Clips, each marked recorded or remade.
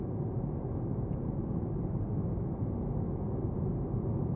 recorded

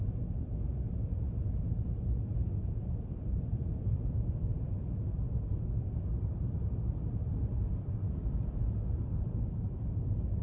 remade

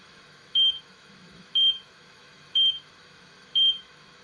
remade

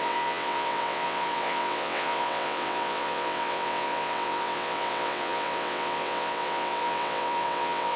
remade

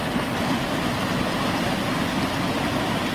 recorded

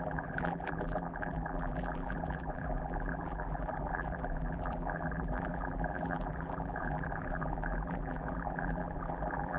remade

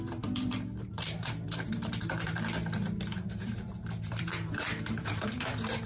remade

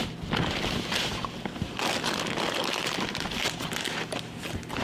recorded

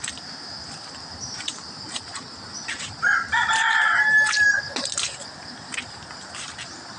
recorded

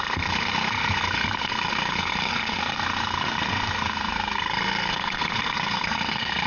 remade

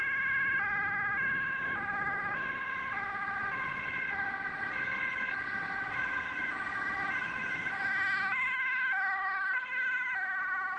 recorded